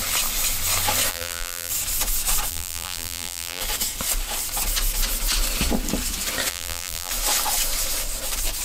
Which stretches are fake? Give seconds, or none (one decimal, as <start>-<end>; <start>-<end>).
1.1-1.7; 2.5-3.6; 6.5-7.1

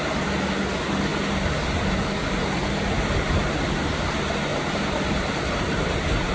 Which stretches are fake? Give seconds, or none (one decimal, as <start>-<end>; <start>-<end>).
1.1-3.1; 4.5-6.3

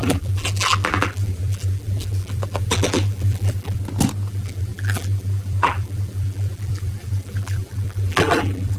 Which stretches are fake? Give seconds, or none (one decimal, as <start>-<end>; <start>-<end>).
0.0-3.8; 4.3-8.8

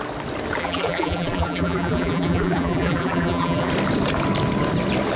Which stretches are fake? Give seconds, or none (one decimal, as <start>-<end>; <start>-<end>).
0.6-3.7

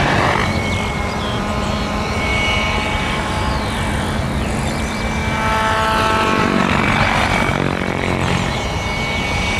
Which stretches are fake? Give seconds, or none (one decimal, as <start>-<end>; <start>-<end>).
0.0-2.3; 3.6-5.2; 6.4-7.5

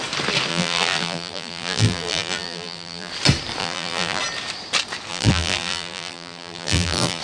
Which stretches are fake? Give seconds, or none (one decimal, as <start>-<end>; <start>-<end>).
0.5-3.1; 3.6-4.2; 5.1-7.2

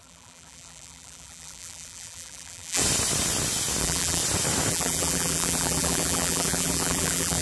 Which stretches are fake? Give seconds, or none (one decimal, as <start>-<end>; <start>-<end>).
0.0-2.8; 3.8-4.2; 4.7-7.4

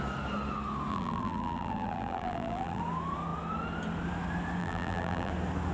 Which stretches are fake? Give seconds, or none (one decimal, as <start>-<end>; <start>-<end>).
0.9-2.8; 4.6-5.3